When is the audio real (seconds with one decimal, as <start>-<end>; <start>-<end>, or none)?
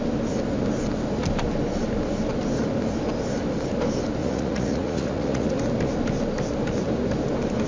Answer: 0.0-4.2; 5.6-7.7